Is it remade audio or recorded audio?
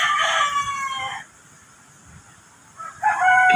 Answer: recorded